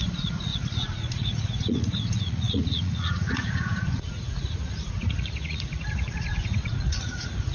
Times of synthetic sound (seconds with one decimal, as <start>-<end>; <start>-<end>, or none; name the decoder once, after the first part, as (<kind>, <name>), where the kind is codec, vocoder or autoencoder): 0.0-7.5 (vocoder, Vocos)